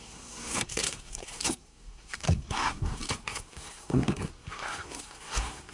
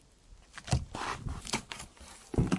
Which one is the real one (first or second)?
second